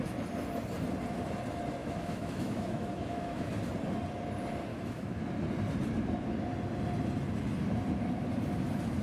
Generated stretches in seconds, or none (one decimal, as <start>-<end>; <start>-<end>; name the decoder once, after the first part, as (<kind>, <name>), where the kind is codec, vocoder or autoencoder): 1.8-3.5 (autoencoder, DAC-VAE); 4.7-5.2